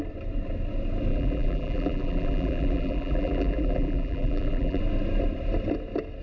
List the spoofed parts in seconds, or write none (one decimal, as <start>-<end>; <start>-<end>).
1.1-4.8